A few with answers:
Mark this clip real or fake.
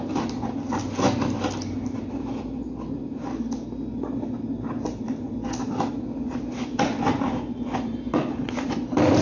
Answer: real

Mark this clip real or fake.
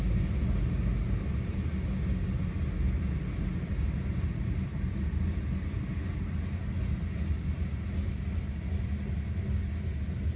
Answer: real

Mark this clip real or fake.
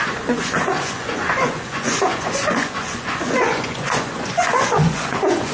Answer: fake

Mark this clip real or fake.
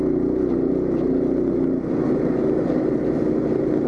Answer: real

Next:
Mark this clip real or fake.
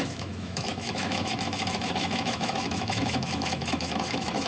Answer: fake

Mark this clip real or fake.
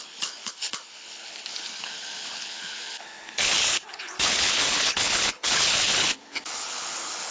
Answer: fake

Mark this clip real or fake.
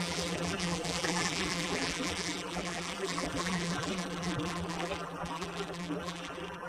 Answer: fake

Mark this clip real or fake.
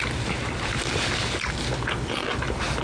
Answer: real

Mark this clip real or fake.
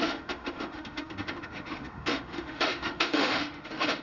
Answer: fake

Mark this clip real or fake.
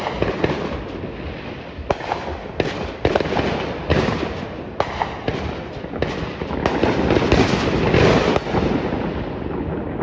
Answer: real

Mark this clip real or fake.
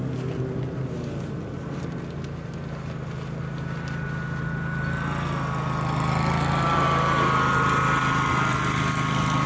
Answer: real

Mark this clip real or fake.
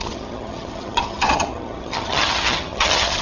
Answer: fake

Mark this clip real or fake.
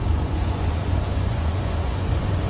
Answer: fake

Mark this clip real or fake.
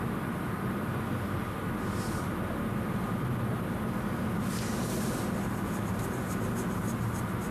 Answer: real